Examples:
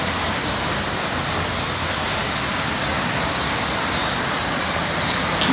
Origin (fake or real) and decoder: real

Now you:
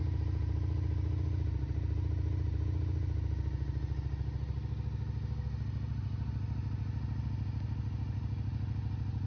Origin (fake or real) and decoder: real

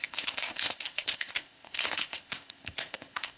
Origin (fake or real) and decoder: fake, codec, ZipCodec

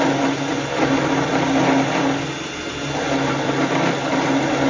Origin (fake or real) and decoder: real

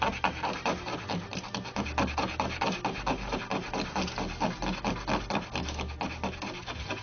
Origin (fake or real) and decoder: real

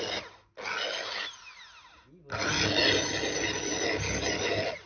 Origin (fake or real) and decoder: real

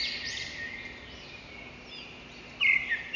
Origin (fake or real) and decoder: real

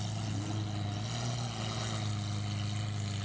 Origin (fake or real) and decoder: real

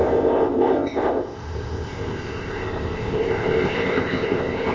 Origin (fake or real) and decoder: fake, codec, ZipCodec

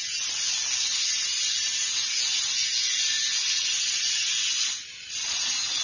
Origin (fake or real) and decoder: real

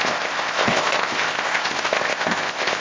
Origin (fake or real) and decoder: fake, codec, ZipCodec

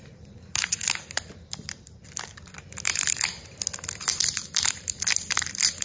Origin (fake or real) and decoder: real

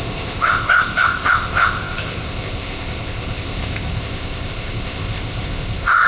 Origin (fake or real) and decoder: fake, codec, ZipCodec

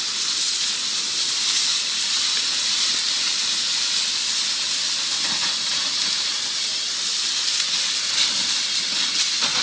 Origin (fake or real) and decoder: real